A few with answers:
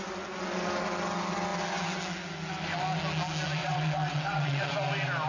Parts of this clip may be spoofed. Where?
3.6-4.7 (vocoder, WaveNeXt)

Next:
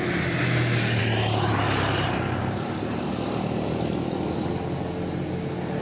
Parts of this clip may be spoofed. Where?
1.0-4.5 (vocoder, BigVGAN v2)

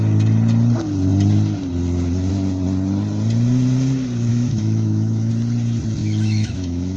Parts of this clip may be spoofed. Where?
4.3-5.3 (autoencoder, DAC-VAE); 6.0-7.0

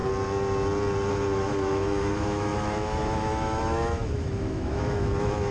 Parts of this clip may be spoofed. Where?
1.1-5.5 (autoencoder, DAC-VAE)

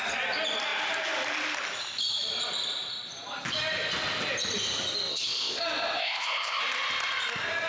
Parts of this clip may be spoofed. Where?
5.1-5.6 (codec, ZipCodec); 6.0-6.6

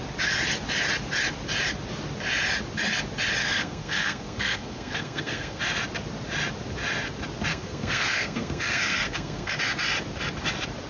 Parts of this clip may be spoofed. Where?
3.4-5.6 (codec, SNAC); 7.5-9.6